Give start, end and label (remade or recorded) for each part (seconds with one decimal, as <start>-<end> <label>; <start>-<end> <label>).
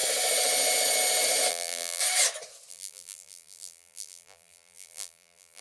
0.0-1.5 recorded; 1.5-2.0 remade; 2.0-2.7 recorded; 2.7-5.6 remade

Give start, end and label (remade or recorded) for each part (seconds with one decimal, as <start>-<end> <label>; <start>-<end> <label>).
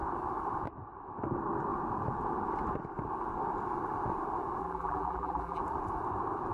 0.0-4.6 recorded; 4.6-5.6 remade; 5.6-6.5 recorded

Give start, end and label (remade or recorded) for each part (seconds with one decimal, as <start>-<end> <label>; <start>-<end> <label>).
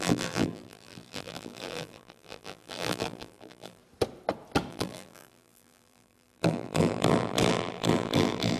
0.0-3.8 remade; 3.8-4.7 recorded; 4.7-8.6 remade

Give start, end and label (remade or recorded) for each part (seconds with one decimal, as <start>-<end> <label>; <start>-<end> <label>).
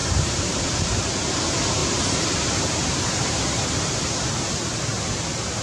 0.0-1.0 remade; 1.0-1.8 recorded; 1.8-4.2 remade; 4.2-5.6 recorded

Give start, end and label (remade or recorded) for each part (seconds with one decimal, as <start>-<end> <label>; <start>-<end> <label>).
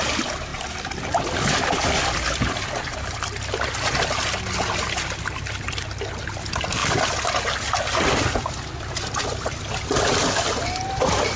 0.0-0.5 recorded; 0.5-3.7 remade; 3.7-6.8 recorded; 6.8-7.3 remade; 7.3-11.4 recorded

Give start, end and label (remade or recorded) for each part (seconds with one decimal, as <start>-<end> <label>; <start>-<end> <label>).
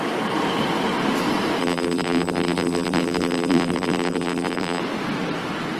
0.0-1.6 recorded; 1.6-4.8 remade; 4.8-5.8 recorded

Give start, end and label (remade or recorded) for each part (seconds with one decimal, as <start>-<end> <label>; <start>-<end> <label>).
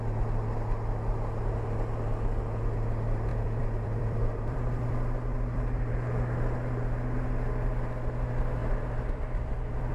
0.0-3.3 recorded; 3.3-5.9 remade; 5.9-8.6 recorded; 8.6-9.9 remade